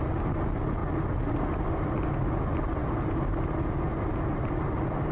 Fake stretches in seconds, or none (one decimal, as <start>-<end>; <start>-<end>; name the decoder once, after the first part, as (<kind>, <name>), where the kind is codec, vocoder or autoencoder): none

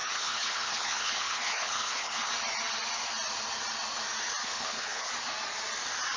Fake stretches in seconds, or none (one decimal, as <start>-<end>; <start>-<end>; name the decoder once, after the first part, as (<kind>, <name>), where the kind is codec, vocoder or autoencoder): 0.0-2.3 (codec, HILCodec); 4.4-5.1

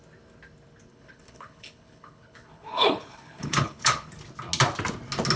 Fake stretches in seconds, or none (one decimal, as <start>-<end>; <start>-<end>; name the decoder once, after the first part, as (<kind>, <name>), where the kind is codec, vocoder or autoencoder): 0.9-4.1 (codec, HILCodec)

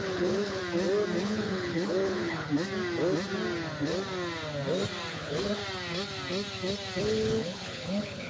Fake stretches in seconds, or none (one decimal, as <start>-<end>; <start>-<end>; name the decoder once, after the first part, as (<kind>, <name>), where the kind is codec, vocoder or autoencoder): 0.0-0.6 (codec, HILCodec); 1.2-2.5; 5.1-5.6; 7.0-8.3